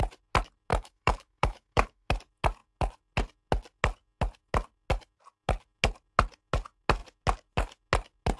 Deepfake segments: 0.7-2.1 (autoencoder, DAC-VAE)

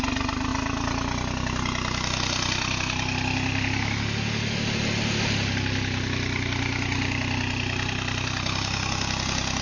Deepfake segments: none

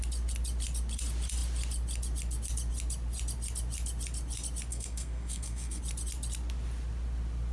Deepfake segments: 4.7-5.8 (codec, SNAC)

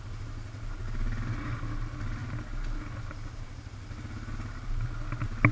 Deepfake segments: none

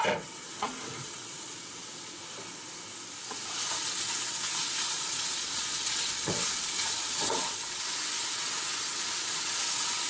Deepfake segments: 0.0-2.2 (vocoder, WaveNeXt); 3.2-10.1